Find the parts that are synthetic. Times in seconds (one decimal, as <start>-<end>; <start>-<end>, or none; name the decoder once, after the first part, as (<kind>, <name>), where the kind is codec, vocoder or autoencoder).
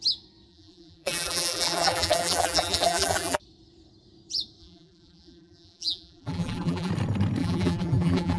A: 0.5-3.4 (vocoder, BigVGAN v2); 4.6-6.9; 7.4-8.4